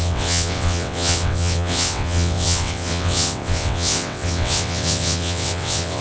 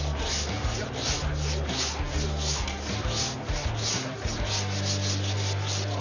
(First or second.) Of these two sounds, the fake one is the first